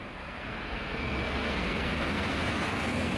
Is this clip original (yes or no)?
no